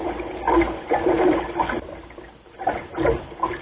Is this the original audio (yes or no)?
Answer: yes